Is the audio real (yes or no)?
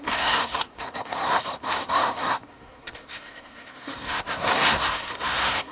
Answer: no